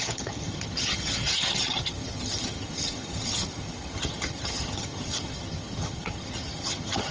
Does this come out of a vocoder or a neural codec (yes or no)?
yes